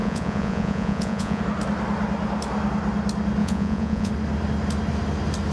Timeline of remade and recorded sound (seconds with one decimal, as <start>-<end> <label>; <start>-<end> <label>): 0.0-1.4 remade; 1.4-3.4 recorded; 3.4-4.1 remade; 4.1-5.5 recorded